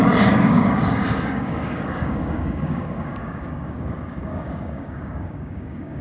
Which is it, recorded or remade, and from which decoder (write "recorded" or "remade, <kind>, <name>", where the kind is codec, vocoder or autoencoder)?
remade, codec, DAC